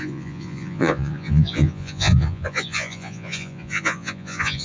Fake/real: fake